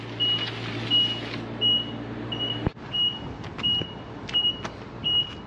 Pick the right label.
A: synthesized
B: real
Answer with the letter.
B